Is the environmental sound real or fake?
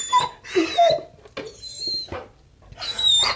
real